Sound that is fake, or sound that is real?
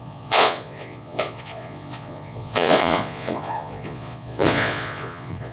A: fake